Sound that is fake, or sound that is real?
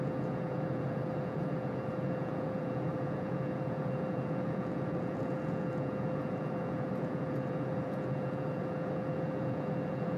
fake